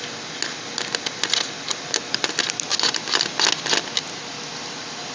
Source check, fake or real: real